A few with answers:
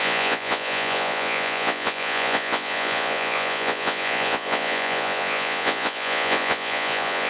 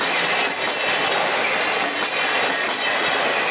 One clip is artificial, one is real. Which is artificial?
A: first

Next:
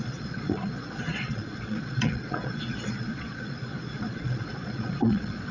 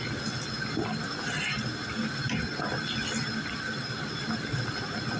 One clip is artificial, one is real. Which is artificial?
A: first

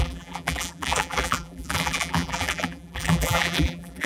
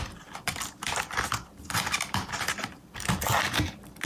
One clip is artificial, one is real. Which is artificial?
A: first